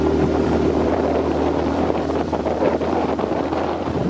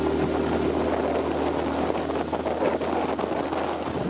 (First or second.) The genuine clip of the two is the second